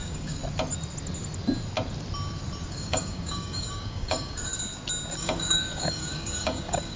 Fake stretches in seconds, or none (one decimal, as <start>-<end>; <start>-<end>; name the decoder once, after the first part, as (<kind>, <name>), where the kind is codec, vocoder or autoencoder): 0.0-0.4 (codec, DAC); 2.7-4.5; 5.2-7.0